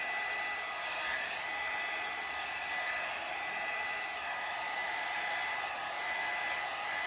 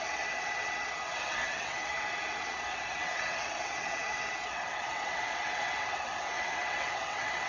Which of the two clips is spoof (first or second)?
second